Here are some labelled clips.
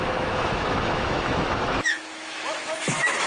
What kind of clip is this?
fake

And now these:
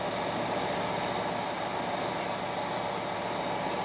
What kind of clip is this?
real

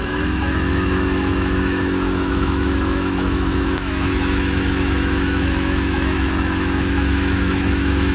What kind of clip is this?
fake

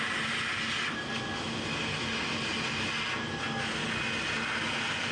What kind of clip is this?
real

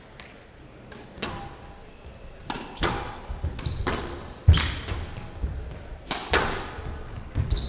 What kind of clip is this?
real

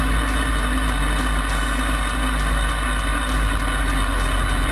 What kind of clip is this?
real